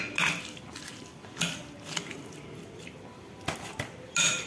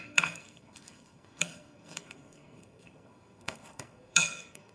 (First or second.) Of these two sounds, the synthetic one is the second